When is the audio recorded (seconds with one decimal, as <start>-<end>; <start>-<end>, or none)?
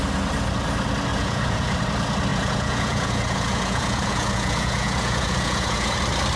0.0-1.1; 1.8-2.3; 6.0-6.4